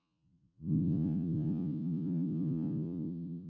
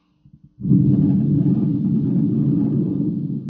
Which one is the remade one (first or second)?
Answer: first